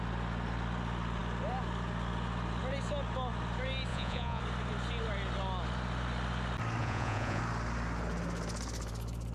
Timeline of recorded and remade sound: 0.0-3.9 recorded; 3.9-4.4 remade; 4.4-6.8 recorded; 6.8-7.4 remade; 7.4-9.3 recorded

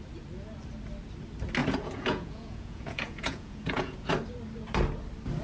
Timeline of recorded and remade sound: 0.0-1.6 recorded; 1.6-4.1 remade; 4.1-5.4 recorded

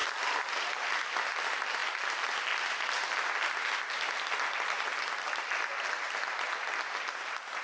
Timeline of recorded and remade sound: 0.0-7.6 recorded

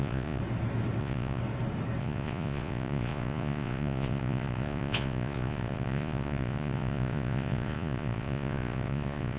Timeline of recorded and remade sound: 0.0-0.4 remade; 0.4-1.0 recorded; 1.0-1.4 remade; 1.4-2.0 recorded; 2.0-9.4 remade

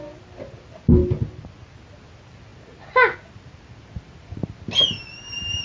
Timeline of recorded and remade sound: 0.0-5.6 recorded